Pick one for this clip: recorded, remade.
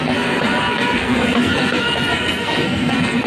remade